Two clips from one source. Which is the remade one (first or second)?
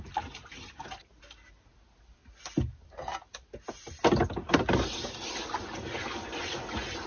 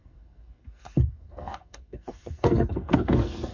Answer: second